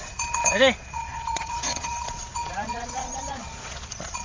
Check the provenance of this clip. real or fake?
fake